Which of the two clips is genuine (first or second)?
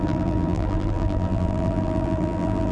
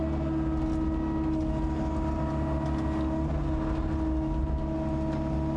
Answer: second